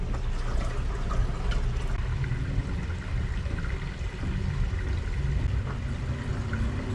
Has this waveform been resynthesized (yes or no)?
no